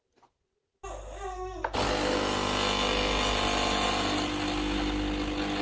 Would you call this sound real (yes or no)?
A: yes